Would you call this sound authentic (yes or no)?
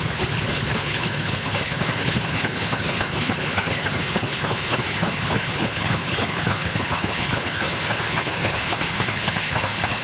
no